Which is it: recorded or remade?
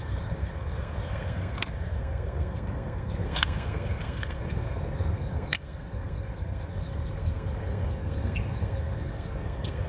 remade